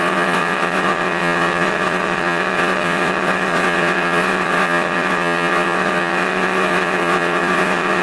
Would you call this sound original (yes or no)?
no